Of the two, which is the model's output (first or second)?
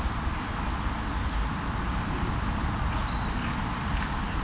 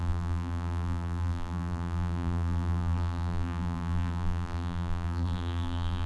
second